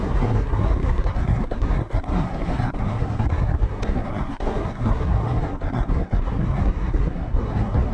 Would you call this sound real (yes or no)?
no